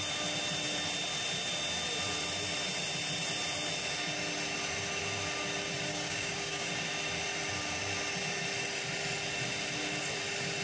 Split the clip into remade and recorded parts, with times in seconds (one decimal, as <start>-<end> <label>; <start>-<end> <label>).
0.0-5.9 recorded; 5.9-6.7 remade; 6.7-10.6 recorded